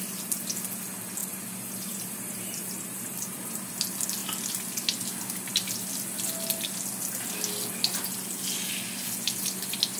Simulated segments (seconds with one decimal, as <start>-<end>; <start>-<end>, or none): 1.2-3.7